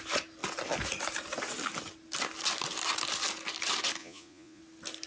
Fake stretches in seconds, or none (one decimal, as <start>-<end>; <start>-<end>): 4.0-4.6